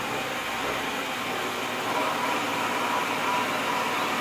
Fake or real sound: real